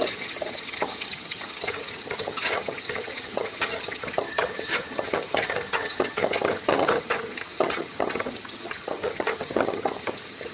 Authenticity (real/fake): fake